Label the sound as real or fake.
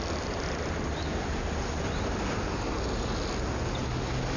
real